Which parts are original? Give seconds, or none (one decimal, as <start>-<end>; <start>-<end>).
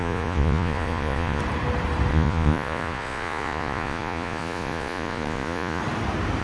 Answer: 1.4-2.1; 5.8-6.4